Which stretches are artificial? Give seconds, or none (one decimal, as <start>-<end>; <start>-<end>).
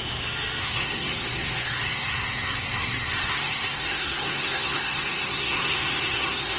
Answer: 0.6-6.6